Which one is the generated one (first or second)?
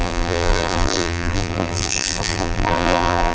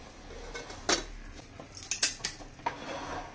first